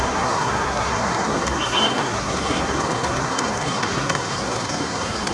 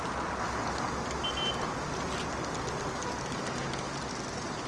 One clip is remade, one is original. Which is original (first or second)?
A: second